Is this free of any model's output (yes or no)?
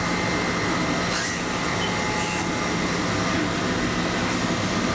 yes